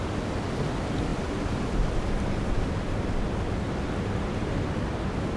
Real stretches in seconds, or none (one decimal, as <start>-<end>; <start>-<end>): 0.0-5.4